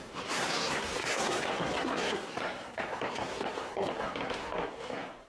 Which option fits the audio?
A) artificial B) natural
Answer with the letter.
A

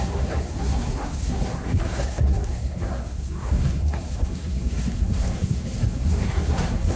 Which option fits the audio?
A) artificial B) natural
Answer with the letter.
A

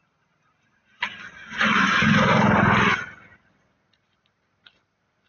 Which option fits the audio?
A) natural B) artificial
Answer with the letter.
A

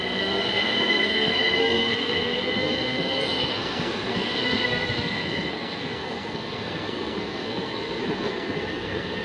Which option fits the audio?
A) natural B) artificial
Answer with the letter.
B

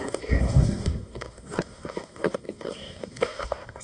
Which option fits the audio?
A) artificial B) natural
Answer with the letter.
A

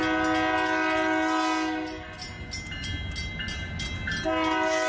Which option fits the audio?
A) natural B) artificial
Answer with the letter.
A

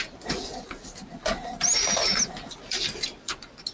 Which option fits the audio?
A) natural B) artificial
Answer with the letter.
A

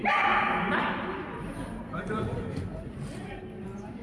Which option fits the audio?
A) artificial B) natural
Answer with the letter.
B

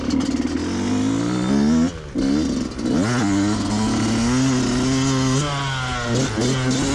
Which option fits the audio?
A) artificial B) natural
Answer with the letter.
B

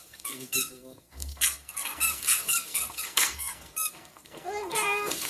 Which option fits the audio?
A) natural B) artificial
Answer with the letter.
B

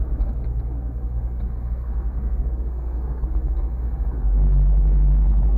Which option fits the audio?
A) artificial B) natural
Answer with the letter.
A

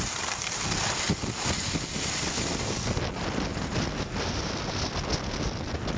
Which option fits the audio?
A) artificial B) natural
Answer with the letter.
B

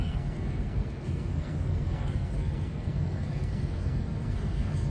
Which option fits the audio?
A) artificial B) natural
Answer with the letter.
A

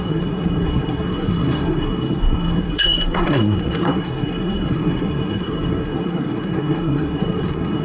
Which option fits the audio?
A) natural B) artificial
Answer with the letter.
B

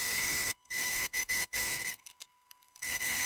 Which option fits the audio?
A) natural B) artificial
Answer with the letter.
B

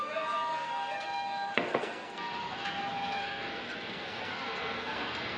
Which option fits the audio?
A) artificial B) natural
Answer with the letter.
A